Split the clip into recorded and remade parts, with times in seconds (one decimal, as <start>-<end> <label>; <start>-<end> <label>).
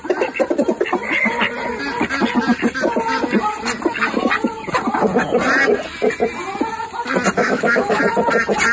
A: 0.0-7.4 recorded; 7.4-8.0 remade; 8.0-8.7 recorded